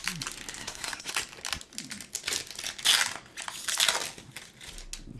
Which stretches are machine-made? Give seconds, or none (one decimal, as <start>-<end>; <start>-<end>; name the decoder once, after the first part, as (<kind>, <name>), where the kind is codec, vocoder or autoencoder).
0.6-1.1 (codec, SNAC)